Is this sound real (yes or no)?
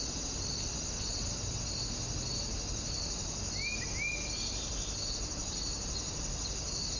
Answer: yes